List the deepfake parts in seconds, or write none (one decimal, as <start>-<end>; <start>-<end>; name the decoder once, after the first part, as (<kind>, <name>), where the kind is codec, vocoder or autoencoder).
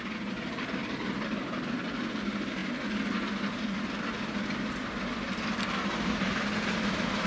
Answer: none